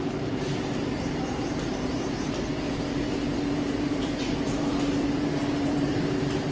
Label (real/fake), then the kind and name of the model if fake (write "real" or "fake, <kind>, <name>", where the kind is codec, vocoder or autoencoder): fake, vocoder, BigVGAN v2